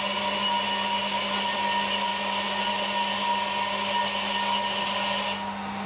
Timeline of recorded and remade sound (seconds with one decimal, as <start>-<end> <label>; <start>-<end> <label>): 0.0-5.9 recorded